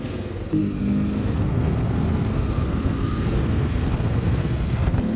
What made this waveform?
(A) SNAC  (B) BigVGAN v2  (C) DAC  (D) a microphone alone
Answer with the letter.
A